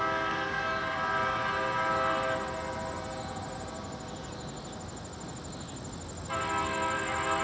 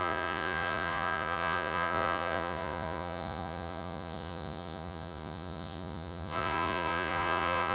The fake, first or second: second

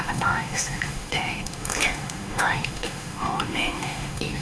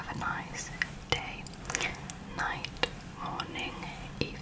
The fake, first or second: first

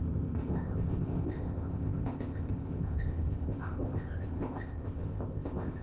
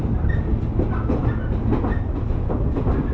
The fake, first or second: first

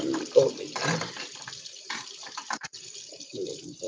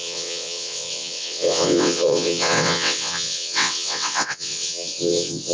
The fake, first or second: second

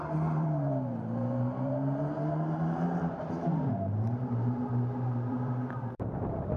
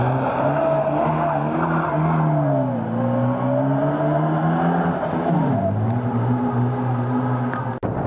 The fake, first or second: first